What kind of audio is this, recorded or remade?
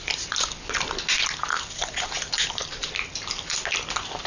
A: recorded